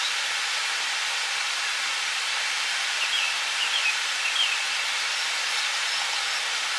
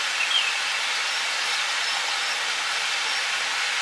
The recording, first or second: second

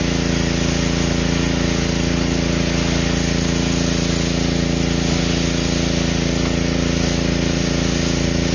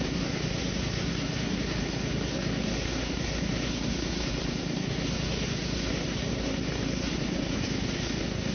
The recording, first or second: first